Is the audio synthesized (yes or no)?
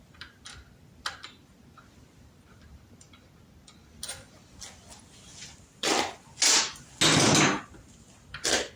no